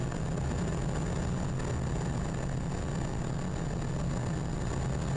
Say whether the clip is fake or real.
real